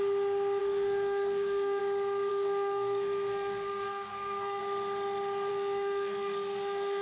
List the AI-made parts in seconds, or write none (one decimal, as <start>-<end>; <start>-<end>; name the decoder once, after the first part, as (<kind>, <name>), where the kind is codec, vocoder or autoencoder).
0.6-1.8 (codec, SNAC); 2.3-4.6; 5.5-7.0